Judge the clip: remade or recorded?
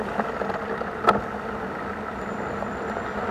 recorded